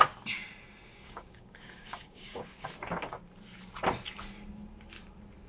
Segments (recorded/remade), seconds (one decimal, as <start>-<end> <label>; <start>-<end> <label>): 0.0-0.9 recorded; 0.9-2.7 remade; 2.7-5.5 recorded